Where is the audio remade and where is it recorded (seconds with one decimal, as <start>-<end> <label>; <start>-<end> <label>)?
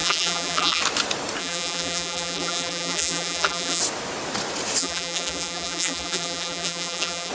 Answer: 0.0-0.8 remade; 0.8-1.4 recorded; 1.4-3.8 remade; 3.8-4.8 recorded; 4.8-7.3 remade